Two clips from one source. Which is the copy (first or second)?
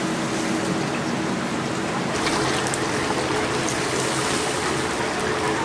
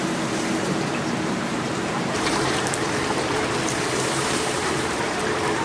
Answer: second